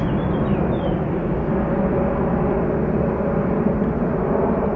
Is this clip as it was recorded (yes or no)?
yes